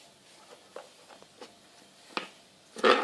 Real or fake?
real